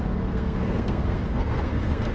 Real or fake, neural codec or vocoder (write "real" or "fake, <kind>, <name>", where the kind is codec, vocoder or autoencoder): fake, codec, SNAC